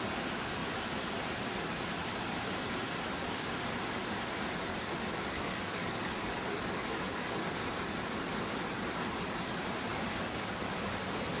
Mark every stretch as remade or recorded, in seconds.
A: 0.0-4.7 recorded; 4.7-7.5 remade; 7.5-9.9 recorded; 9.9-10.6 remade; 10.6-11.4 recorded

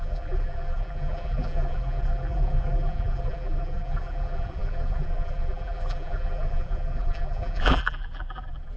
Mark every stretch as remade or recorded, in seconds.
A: 0.0-8.8 remade

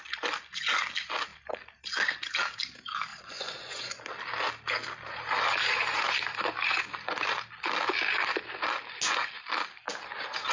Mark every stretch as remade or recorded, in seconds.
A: 0.0-3.1 recorded; 3.1-4.0 remade; 4.0-10.5 recorded

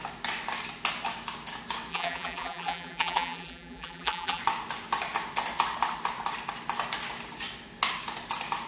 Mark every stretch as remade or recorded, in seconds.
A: 0.0-1.9 recorded; 1.9-4.4 remade; 4.4-8.7 recorded

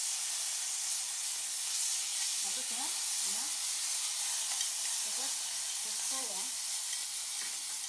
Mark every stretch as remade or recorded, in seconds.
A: 0.0-2.1 recorded; 2.1-6.8 remade; 6.8-7.9 recorded

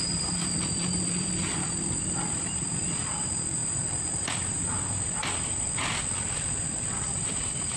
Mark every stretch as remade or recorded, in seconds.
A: 0.0-7.8 recorded